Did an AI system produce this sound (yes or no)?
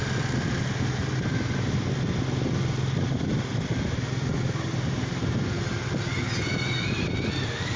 no